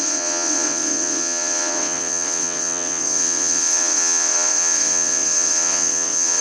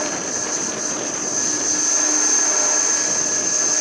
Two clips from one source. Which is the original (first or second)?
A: second